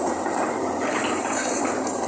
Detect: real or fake fake